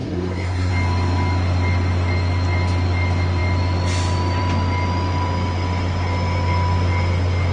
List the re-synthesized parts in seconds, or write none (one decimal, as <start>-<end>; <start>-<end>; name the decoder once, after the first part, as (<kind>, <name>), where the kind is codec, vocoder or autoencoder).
0.0-0.7 (codec, SNAC)